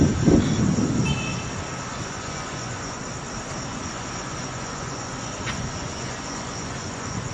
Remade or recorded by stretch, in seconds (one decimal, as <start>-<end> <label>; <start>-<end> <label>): 0.0-1.9 recorded; 1.9-3.0 remade; 3.0-3.7 recorded; 3.7-7.3 remade

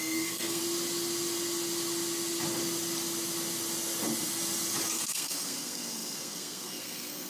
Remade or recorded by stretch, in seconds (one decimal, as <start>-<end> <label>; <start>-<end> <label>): 0.0-0.6 remade; 0.6-4.9 recorded; 4.9-7.3 remade

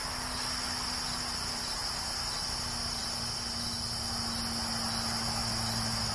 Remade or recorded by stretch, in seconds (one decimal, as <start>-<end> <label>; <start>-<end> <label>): 0.0-6.1 recorded

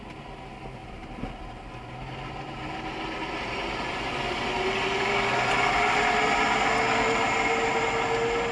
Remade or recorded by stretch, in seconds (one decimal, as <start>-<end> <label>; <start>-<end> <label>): 0.0-8.5 recorded

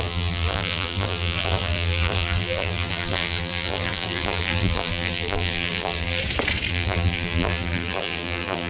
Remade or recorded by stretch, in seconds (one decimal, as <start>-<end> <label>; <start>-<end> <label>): 0.0-6.2 remade; 6.2-6.7 recorded; 6.7-8.7 remade

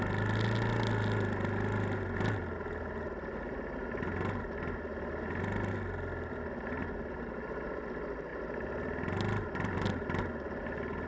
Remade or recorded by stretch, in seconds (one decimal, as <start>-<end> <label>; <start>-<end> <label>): 0.0-8.3 recorded; 8.3-9.9 remade; 9.9-11.1 recorded